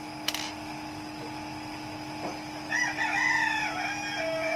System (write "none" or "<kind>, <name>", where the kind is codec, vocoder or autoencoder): none